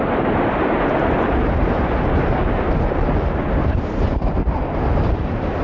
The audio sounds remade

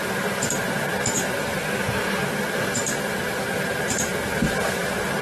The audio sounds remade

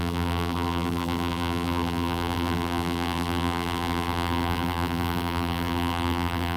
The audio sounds remade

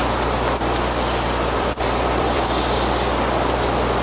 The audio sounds remade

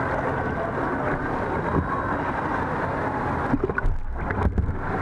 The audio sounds recorded